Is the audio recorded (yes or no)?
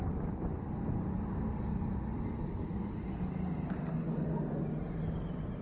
yes